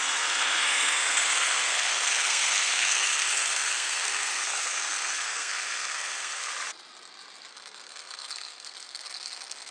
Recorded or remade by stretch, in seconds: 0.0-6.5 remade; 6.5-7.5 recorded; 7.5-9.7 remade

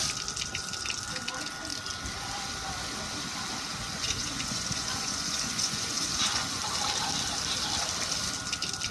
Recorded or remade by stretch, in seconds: 0.0-3.8 recorded; 3.8-6.6 remade; 6.6-8.9 recorded

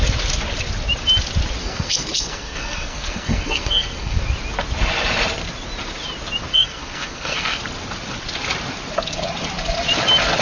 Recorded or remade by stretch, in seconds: 0.0-1.6 recorded; 1.6-4.2 remade; 4.2-6.5 recorded; 6.5-7.6 remade; 7.6-10.4 recorded

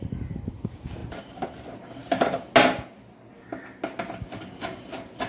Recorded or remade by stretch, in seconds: 0.0-5.3 recorded